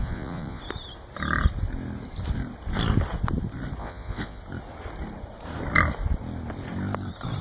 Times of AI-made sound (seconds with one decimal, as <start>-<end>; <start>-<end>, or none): 0.0-0.6; 3.8-4.4